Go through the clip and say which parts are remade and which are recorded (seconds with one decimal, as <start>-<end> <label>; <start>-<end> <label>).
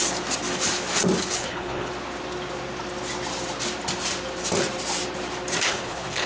0.0-1.3 recorded; 1.3-1.9 remade; 1.9-5.7 recorded; 5.7-6.3 remade